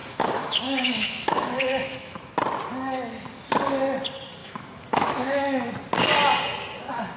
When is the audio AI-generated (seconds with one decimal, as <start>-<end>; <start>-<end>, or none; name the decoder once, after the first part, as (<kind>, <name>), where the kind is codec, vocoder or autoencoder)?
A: 0.0-2.3 (autoencoder, DAC-VAE); 4.4-5.7